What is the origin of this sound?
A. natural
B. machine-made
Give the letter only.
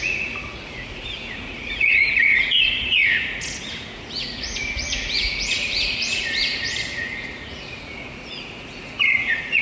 B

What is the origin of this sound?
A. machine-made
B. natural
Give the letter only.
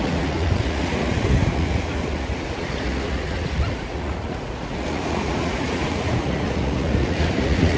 A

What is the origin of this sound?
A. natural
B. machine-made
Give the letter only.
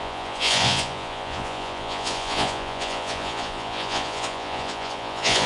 B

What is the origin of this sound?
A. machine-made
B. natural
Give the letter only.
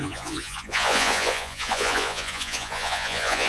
A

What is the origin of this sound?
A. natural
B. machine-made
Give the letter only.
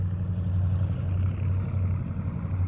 A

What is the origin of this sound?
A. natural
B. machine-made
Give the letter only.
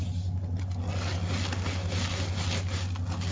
A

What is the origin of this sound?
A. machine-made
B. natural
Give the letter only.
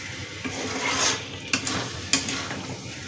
B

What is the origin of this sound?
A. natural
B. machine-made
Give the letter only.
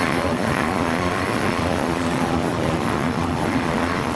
B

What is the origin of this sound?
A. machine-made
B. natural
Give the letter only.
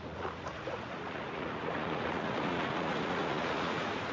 A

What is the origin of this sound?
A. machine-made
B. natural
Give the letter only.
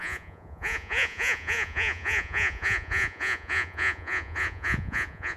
A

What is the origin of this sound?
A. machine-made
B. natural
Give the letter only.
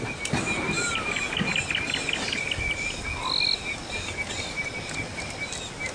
B